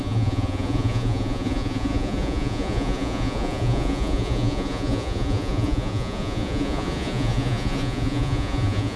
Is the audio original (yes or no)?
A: no